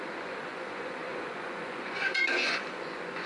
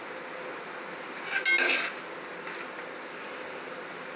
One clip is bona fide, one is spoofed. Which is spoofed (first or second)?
first